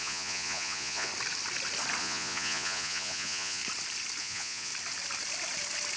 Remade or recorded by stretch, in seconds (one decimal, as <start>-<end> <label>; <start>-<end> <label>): 0.0-1.1 remade; 1.1-2.0 recorded; 2.0-3.6 remade; 3.6-4.2 recorded; 4.2-4.7 remade; 4.7-6.0 recorded